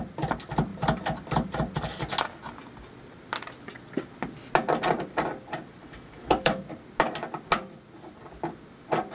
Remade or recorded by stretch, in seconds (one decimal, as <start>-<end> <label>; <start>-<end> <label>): 0.0-5.8 recorded; 5.8-6.6 remade; 6.6-9.1 recorded